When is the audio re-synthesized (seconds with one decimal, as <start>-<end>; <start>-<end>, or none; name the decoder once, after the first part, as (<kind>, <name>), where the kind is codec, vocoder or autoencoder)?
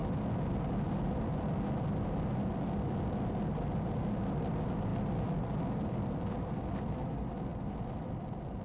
none